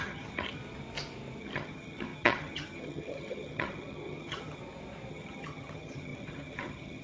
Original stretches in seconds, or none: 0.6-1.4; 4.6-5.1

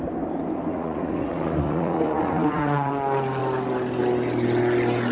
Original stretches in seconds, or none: 0.0-0.7; 2.9-5.1

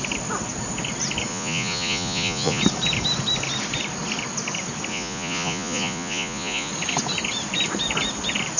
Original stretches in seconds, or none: 0.0-1.3; 2.6-4.9; 6.7-8.6

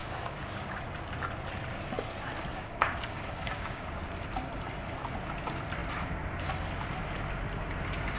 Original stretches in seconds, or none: 0.8-2.5; 4.1-8.2

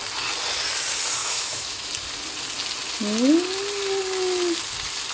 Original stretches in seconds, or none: 0.0-1.2; 1.9-5.1

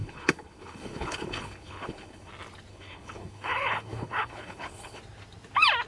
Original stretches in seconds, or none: 2.3-2.7; 5.0-5.9